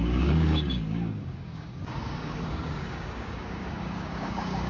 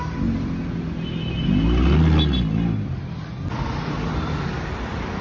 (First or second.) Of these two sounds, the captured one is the second